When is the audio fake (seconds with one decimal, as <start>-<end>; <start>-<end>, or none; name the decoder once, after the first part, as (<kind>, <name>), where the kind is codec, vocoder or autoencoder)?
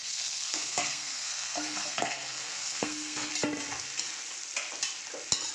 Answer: 0.0-3.3 (codec, SNAC)